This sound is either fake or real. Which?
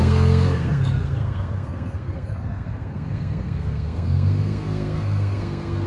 fake